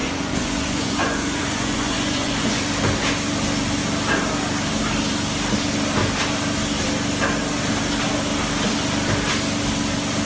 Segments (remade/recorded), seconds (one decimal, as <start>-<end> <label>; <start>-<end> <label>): 0.0-2.6 remade; 2.6-10.2 recorded